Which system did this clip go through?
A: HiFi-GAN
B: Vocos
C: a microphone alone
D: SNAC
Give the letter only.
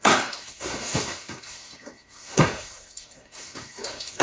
D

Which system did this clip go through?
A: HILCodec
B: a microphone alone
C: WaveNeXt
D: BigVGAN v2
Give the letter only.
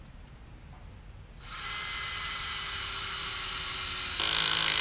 B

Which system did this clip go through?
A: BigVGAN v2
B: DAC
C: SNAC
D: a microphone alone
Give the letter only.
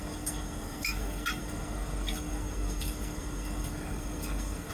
C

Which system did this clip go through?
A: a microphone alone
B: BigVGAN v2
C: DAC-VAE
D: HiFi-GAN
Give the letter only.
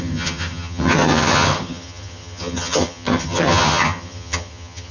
D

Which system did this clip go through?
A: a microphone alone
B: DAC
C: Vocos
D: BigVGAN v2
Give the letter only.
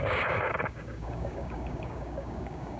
B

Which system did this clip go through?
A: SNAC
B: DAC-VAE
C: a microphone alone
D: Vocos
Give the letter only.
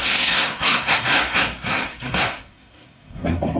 A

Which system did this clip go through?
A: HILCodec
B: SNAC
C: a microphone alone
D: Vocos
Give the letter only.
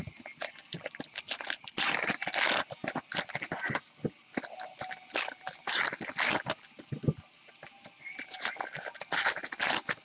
C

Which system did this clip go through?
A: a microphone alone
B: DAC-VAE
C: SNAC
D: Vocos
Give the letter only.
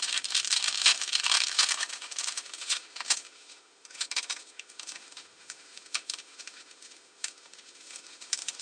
B